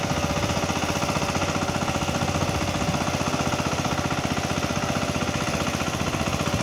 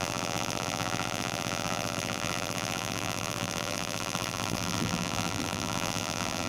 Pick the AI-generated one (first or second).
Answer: second